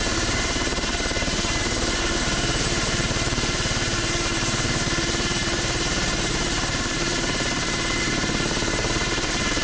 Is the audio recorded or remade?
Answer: remade